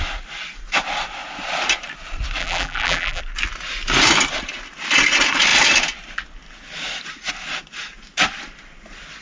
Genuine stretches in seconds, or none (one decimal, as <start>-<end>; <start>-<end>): 0.0-2.4; 3.2-9.2